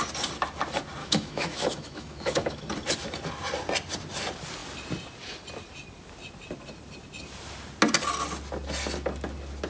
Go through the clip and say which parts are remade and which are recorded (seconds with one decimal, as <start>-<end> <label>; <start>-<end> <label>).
0.0-1.0 recorded; 1.0-2.6 remade; 2.6-9.7 recorded